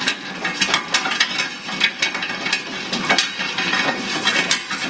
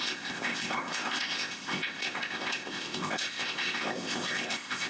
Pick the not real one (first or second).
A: second